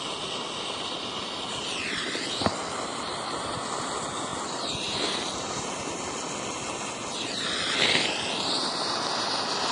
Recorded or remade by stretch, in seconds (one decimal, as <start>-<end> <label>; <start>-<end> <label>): 0.0-9.7 recorded